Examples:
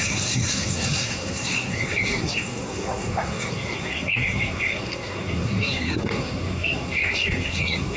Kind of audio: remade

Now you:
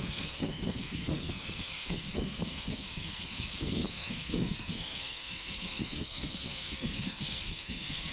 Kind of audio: remade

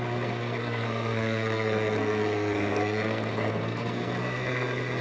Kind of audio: remade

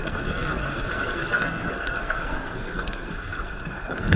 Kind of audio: remade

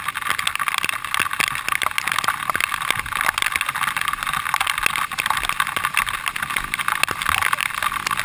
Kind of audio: recorded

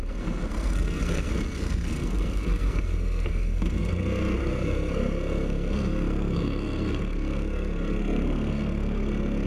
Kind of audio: remade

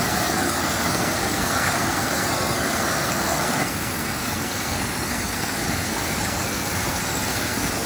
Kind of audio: remade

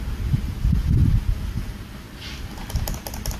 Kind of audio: recorded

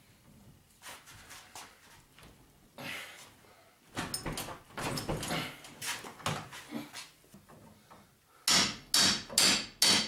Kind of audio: recorded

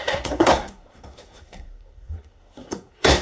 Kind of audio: remade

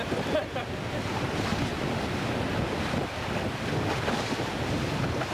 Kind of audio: recorded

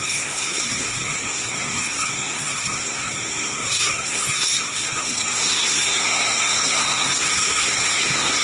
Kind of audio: remade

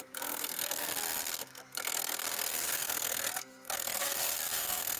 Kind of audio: remade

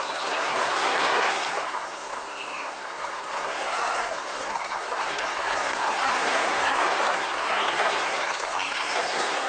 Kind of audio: remade